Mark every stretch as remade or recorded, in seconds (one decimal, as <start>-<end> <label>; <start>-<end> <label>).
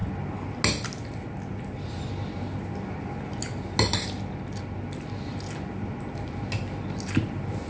0.0-7.7 recorded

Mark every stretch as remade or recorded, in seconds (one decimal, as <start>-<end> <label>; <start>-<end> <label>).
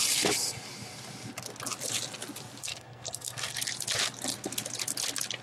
0.0-2.6 recorded; 2.6-3.6 remade; 3.6-5.4 recorded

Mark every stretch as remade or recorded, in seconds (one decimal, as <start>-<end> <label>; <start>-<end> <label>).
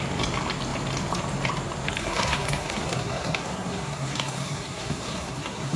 0.0-2.0 recorded; 2.0-5.8 remade